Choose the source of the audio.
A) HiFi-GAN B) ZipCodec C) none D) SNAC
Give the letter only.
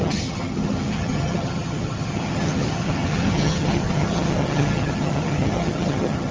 A